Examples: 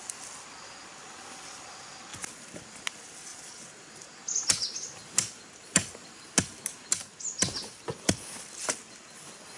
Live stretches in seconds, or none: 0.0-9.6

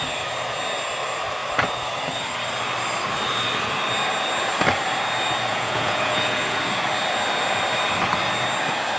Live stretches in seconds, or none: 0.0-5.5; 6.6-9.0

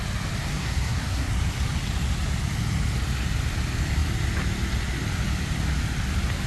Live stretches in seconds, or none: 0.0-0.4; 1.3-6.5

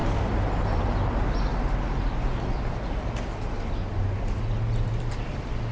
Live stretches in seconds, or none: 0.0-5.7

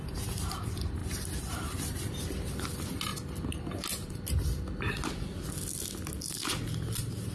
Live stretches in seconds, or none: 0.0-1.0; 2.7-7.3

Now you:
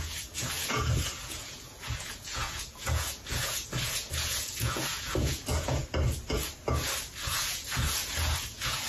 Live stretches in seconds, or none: 5.8-7.3

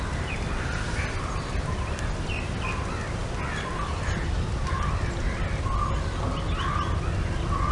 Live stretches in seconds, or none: 0.0-7.7

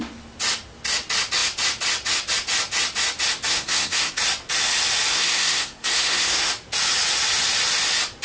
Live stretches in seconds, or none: 0.0-3.5; 4.2-5.1; 6.5-8.2